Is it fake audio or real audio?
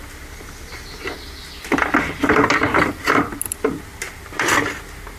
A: real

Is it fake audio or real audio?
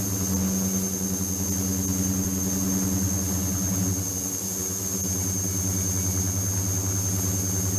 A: real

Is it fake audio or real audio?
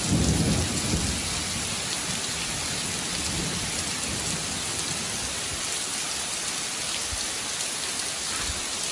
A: real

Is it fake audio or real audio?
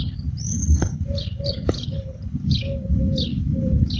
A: fake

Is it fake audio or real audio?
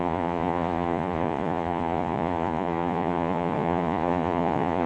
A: fake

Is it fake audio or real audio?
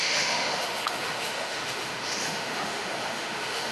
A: fake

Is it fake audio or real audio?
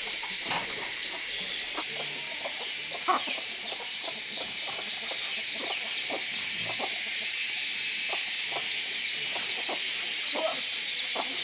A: fake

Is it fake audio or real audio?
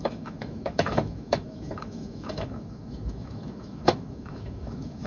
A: fake